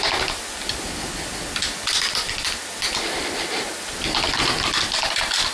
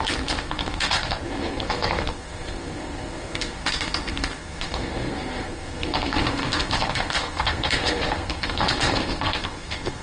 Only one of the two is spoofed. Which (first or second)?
second